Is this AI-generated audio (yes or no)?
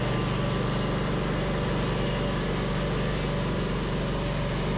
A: no